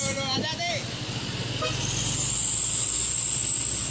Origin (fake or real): real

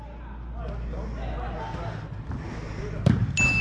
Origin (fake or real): real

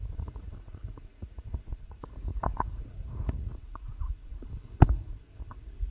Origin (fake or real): fake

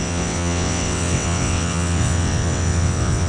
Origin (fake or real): fake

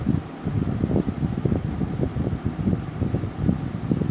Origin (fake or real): fake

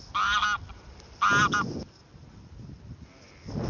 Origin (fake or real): real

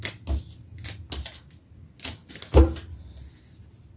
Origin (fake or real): real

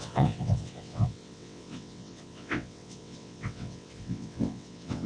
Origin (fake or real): fake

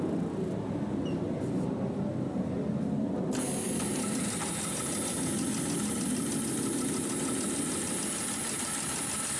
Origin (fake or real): real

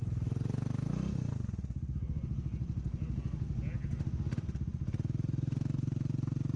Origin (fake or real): real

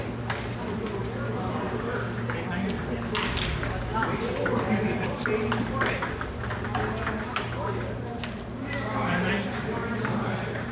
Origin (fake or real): real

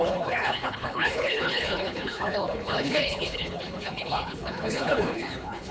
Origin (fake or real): fake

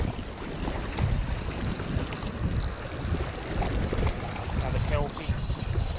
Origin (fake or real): real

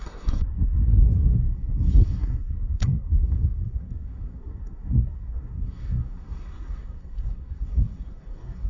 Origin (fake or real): fake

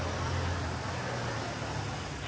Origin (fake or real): real